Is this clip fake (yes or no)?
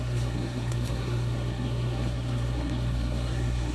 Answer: yes